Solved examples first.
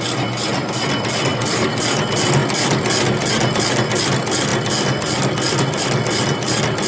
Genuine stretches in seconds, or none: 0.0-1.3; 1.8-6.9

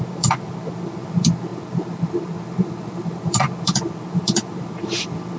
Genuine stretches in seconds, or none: none

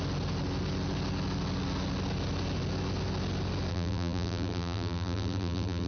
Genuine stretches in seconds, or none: 0.0-3.7

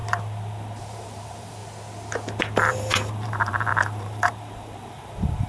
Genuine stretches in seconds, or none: 0.0-0.8; 1.6-2.7

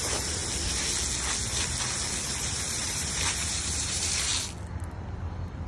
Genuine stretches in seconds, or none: 0.4-2.5; 4.3-5.2

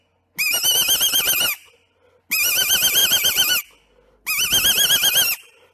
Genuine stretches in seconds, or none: 0.0-3.0; 3.6-5.7